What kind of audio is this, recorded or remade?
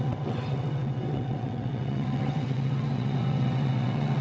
remade